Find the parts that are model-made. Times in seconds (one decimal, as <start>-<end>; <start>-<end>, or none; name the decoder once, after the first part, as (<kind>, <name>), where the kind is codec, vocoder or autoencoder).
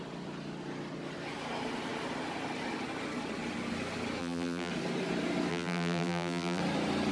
4.2-4.7 (vocoder, BigVGAN v2); 5.5-6.6